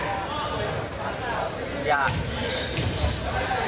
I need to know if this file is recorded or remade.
recorded